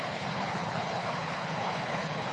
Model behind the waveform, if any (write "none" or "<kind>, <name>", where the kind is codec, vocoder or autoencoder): codec, HILCodec